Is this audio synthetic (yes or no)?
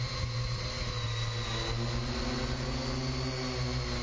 no